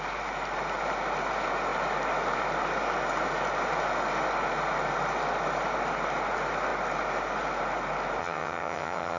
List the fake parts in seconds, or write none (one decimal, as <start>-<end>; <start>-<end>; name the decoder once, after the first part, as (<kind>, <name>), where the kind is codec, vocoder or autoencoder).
8.2-9.2 (vocoder, HiFi-GAN)